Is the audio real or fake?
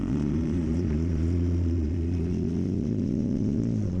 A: fake